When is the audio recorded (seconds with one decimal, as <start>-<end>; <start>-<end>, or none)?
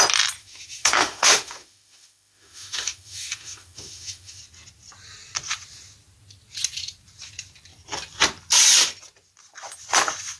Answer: 0.0-0.4; 4.4-10.4